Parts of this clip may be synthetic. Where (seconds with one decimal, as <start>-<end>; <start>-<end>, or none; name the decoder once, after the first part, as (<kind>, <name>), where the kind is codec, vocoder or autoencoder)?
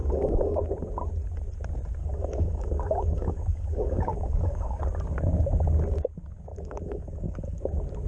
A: 0.0-0.6 (codec, DAC); 2.0-4.8; 6.5-7.6